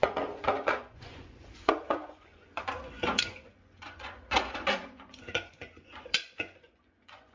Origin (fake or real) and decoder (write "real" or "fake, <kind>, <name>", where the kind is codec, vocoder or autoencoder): fake, vocoder, Vocos